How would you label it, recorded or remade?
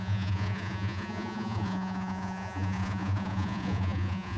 remade